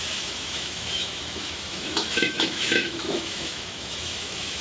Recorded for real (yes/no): no